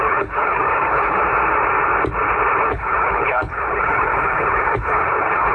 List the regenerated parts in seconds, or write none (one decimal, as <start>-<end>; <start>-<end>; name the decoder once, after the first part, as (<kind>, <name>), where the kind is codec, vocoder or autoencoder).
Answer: 0.0-1.2 (codec, HILCodec); 2.6-5.5